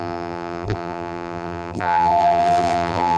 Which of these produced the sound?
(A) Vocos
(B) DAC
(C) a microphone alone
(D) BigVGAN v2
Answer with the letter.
D